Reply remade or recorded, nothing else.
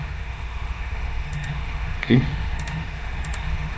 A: remade